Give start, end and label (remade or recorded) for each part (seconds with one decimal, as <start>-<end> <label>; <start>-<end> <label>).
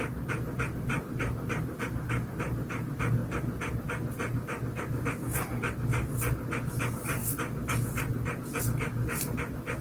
0.0-9.8 recorded